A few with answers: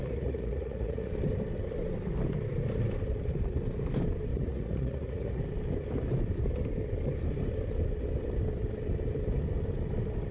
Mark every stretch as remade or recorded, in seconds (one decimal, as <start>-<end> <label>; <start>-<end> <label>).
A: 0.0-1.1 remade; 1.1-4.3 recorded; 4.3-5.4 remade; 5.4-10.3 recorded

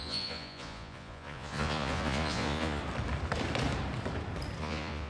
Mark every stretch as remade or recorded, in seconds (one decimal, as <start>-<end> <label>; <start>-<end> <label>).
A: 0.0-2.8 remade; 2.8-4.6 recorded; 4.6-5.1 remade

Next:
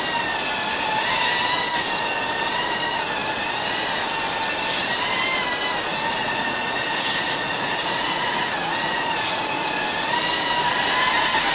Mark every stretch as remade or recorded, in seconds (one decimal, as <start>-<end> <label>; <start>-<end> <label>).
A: 0.0-5.9 recorded; 5.9-9.7 remade; 9.7-11.5 recorded